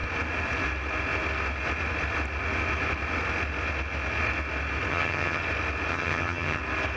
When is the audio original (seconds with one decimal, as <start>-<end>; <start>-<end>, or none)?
0.0-4.9; 5.4-5.9; 6.6-7.0